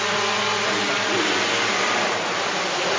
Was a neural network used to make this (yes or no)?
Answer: no